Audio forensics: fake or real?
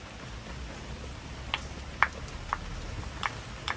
real